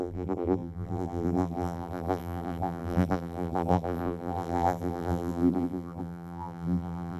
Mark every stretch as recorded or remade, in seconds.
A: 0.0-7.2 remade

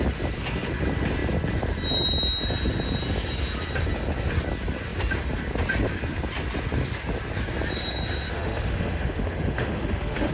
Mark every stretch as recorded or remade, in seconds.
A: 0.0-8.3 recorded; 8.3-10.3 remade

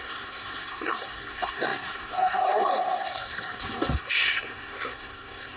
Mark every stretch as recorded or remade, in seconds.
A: 0.0-5.6 remade

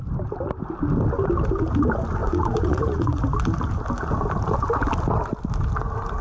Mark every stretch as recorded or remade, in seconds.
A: 0.0-2.2 recorded; 2.2-3.2 remade; 3.2-6.2 recorded